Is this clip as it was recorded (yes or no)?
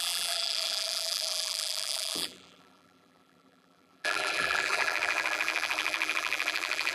no